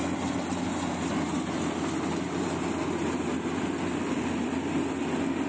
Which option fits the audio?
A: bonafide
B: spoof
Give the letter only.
A